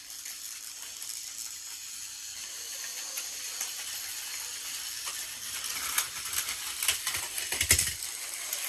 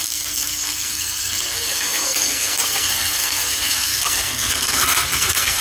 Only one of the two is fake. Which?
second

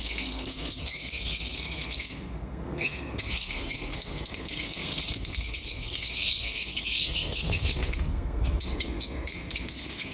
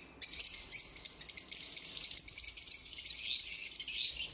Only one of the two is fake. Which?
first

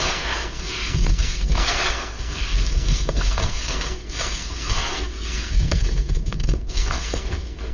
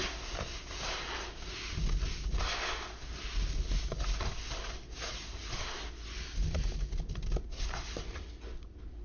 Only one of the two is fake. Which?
first